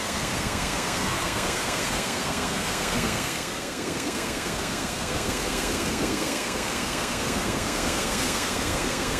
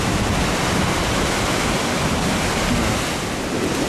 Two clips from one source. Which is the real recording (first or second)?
second